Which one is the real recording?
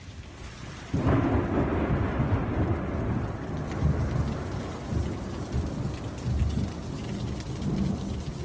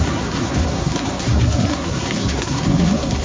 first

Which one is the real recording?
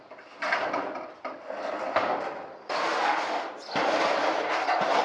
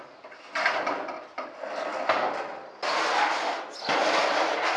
second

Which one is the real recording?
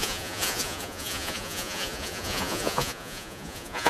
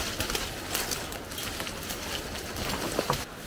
second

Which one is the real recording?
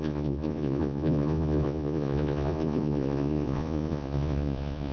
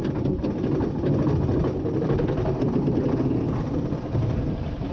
second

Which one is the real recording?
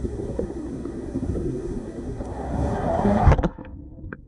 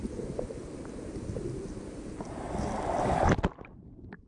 second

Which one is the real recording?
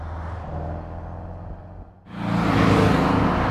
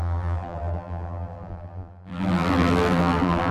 first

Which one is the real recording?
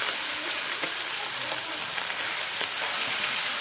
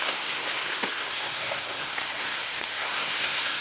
first